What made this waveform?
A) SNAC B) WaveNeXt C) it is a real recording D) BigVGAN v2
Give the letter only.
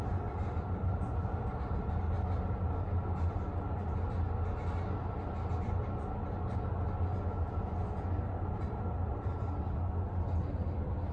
C